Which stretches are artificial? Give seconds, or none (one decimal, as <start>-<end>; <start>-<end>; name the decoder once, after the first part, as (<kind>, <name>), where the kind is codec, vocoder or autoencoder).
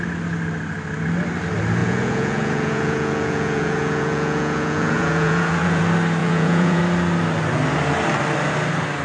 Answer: 1.8-5.8 (vocoder, Vocos); 6.2-6.8